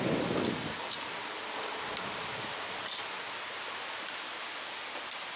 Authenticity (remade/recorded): recorded